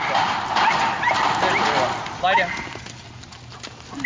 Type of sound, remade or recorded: recorded